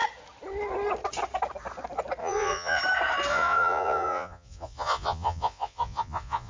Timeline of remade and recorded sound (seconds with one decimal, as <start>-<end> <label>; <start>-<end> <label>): 0.0-2.2 recorded; 2.2-2.8 remade; 2.8-3.3 recorded; 3.3-6.5 remade